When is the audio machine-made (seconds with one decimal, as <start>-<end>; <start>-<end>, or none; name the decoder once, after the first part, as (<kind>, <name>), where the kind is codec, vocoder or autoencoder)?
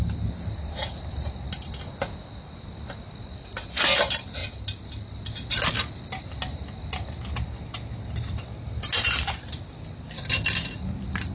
none